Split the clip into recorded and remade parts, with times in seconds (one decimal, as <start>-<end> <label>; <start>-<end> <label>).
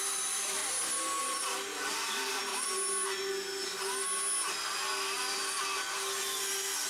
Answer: 0.0-0.6 remade; 0.6-1.2 recorded; 1.2-2.5 remade; 2.5-6.9 recorded